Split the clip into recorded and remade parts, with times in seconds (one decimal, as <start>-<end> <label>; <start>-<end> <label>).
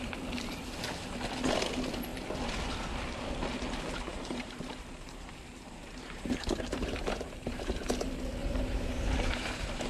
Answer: 0.0-4.1 recorded; 4.1-7.7 remade; 7.7-8.4 recorded; 8.4-9.9 remade